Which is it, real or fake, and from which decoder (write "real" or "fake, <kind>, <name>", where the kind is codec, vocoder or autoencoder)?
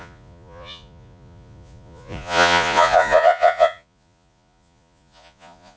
fake, vocoder, Vocos